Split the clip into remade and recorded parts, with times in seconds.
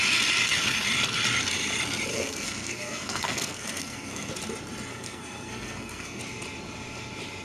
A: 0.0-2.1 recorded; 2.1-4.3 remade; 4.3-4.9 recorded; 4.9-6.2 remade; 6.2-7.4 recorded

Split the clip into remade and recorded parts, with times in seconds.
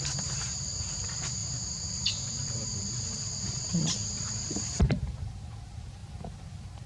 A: 0.0-6.0 remade; 6.0-6.9 recorded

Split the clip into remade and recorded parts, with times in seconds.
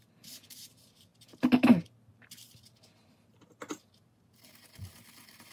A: 0.0-5.5 recorded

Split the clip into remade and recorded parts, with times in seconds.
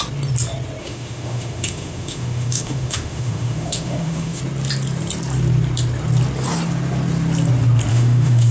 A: 0.0-0.8 recorded; 0.8-4.4 remade; 4.4-7.9 recorded; 7.9-8.5 remade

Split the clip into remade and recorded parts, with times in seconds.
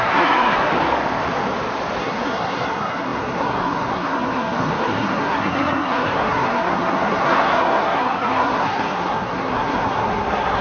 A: 0.0-0.7 remade; 0.7-2.0 recorded; 2.0-10.6 remade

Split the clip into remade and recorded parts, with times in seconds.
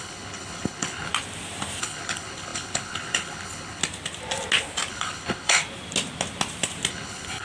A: 0.0-1.1 remade; 1.1-1.8 recorded; 1.8-3.8 remade; 3.8-4.9 recorded; 4.9-5.6 remade; 5.6-6.9 recorded; 6.9-7.4 remade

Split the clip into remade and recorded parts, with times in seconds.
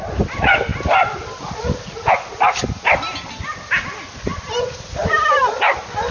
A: 0.0-6.1 recorded